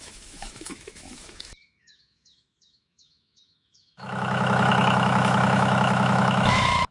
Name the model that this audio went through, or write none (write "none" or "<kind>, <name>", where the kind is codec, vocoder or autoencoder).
autoencoder, DAC-VAE